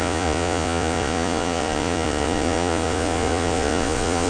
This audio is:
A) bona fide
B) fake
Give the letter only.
B